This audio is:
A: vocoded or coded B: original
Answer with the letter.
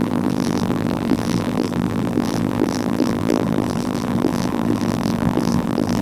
A